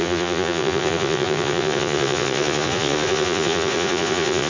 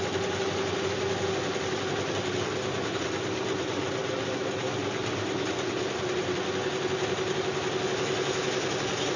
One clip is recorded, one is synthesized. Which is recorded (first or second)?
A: second